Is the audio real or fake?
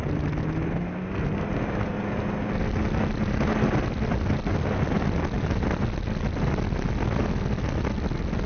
real